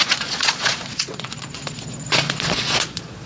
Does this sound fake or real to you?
fake